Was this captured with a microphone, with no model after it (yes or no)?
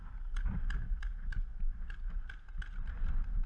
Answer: yes